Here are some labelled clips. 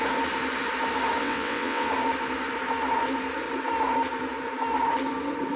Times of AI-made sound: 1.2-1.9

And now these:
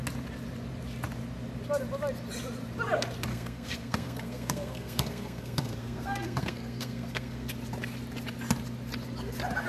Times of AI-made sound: 3.3-7.5